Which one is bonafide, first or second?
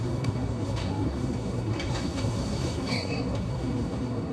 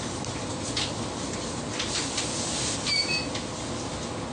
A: second